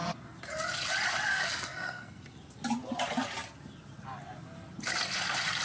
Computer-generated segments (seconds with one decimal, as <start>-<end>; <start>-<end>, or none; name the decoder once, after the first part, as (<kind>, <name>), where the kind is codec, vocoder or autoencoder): 1.3-2.2 (codec, SNAC)